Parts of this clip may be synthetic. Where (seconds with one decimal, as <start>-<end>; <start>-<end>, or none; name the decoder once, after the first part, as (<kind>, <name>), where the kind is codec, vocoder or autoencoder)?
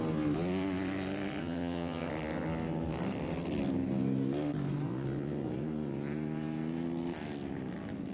1.4-2.1 (vocoder, HiFi-GAN)